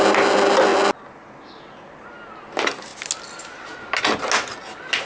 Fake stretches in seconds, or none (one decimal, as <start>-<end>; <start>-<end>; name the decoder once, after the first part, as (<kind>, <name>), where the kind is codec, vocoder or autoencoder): none